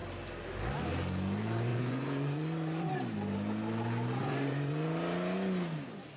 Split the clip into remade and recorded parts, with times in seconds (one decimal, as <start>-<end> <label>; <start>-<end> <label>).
0.0-1.7 recorded; 1.7-2.9 remade; 2.9-4.2 recorded; 4.2-4.7 remade; 4.7-6.2 recorded